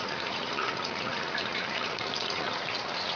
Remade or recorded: remade